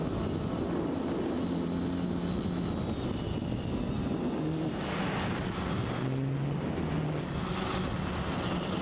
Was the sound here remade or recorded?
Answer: recorded